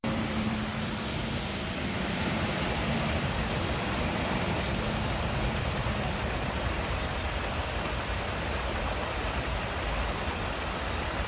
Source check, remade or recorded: remade